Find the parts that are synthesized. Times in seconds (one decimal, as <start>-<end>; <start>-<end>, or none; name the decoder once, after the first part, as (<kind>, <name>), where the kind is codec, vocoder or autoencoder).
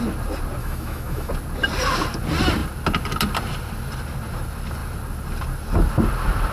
0.6-1.3 (autoencoder, DAC-VAE)